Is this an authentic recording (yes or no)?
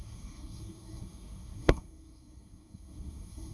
no